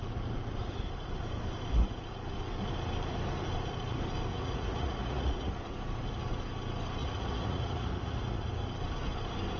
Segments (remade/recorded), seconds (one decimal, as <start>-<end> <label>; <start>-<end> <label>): 0.0-4.3 recorded; 4.3-5.5 remade; 5.5-7.0 recorded; 7.0-8.5 remade; 8.5-9.6 recorded